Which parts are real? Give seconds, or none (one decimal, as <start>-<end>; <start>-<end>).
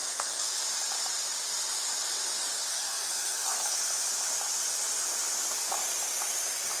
0.6-2.7; 3.7-6.8